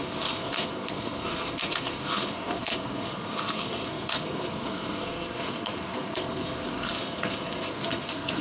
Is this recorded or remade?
remade